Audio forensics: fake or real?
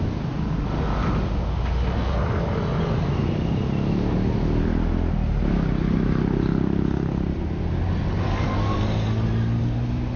real